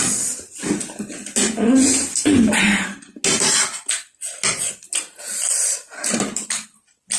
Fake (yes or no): no